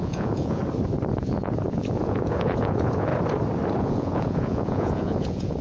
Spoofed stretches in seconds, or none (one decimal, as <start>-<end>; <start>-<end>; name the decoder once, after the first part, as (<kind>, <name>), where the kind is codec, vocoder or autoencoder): 0.0-0.6 (vocoder, Vocos); 1.1-3.1; 3.8-5.6